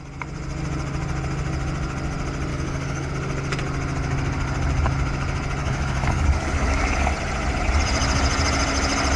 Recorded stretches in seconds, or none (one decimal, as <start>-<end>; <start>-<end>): 0.0-2.5; 3.1-5.6; 7.1-9.2